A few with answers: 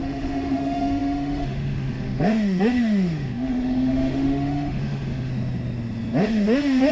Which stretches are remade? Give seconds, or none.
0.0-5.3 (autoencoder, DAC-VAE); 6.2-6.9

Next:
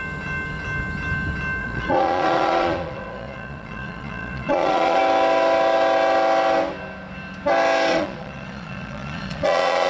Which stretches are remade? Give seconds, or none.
1.6-5.0 (vocoder, Vocos); 7.9-9.9

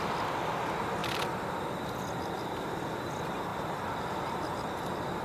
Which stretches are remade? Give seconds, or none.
3.5-4.5 (vocoder, BigVGAN v2)

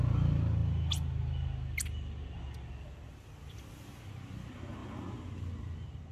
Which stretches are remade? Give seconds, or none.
none

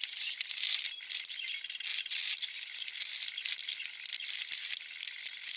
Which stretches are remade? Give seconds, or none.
none

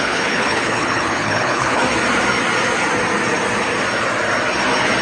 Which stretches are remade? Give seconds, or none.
0.0-1.8 (codec, HILCodec)

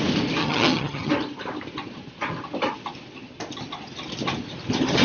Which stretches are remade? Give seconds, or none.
0.4-1.1 (vocoder, HiFi-GAN)